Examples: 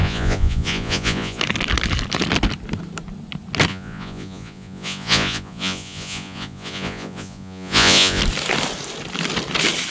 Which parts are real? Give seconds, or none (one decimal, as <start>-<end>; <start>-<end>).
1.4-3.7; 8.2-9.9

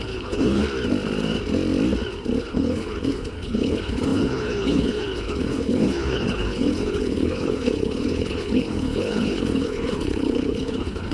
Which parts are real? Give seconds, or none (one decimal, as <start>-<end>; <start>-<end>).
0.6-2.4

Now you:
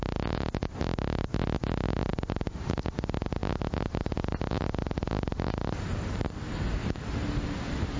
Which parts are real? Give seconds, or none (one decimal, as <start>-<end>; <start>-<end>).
0.0-8.0

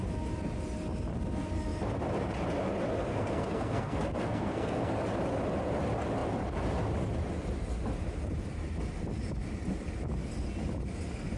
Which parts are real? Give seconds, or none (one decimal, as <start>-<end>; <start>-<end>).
0.0-3.1; 4.9-11.4

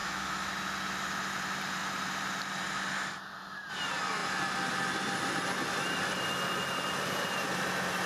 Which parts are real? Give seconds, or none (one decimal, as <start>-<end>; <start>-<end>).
0.5-8.1

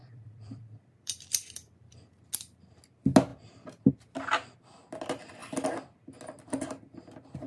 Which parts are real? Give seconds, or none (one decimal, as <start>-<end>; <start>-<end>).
2.2-7.5